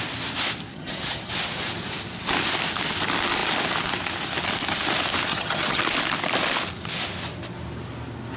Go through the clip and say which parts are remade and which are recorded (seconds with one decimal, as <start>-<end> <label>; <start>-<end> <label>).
0.0-0.7 recorded; 0.7-1.3 remade; 1.3-5.3 recorded; 5.3-5.8 remade; 5.8-8.4 recorded